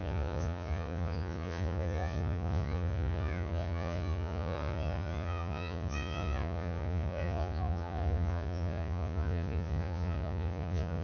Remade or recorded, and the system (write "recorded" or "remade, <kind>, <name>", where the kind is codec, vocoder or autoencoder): remade, vocoder, Vocos